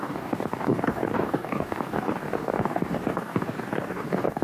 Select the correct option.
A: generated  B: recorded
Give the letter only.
A